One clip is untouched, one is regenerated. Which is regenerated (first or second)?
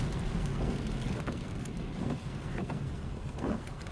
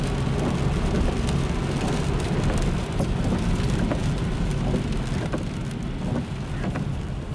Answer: first